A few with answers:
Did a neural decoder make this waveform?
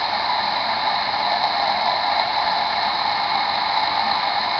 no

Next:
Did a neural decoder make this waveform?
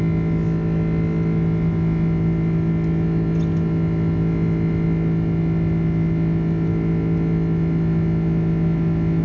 no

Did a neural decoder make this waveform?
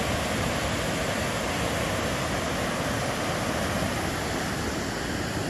no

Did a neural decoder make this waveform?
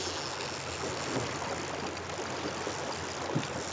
no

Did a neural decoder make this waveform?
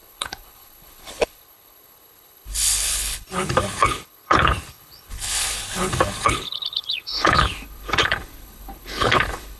yes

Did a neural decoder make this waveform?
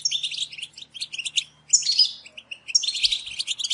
no